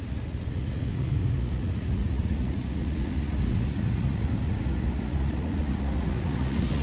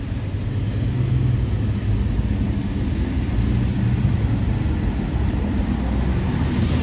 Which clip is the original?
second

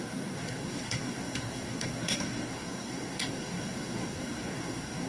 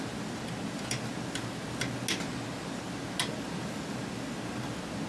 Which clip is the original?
second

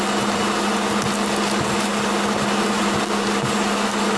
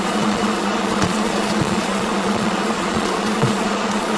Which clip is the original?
first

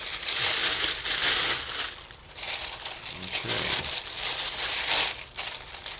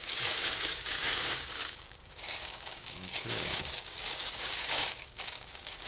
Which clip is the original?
first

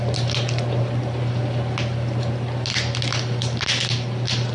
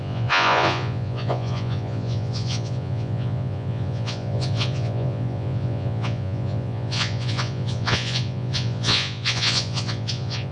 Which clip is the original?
first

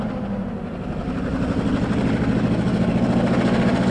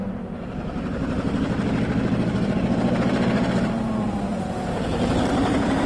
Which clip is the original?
first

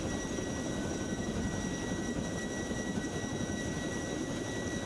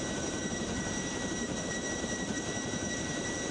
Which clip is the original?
first